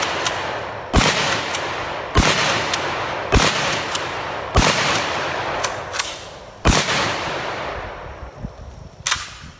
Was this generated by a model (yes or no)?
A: no